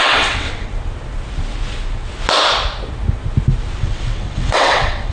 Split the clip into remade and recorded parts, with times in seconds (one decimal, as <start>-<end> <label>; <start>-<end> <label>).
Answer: 0.0-0.7 remade; 0.7-3.8 recorded; 3.8-5.1 remade